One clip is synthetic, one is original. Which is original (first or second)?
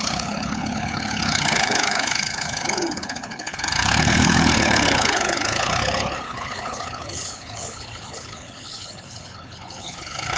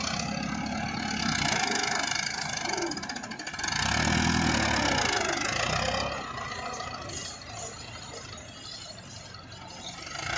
second